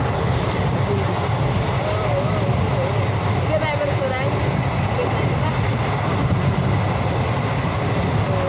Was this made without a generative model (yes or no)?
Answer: yes